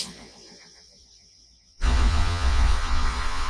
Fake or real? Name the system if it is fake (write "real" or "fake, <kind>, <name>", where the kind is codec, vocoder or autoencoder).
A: fake, vocoder, Vocos